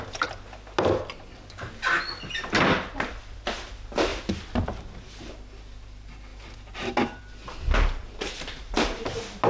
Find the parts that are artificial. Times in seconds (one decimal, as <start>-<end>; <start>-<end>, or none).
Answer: 4.1-4.6; 6.3-7.2; 8.0-8.6